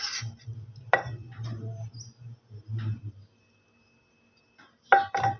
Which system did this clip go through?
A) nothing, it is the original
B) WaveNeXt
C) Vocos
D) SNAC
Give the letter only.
A